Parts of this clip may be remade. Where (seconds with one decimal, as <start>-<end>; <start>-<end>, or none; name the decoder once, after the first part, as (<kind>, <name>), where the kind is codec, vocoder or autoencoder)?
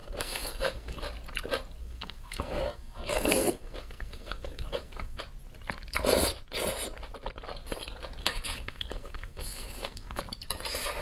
0.0-1.0 (codec, SNAC); 1.8-5.2; 8.2-10.2